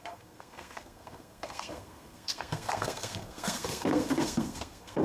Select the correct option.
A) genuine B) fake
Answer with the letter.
B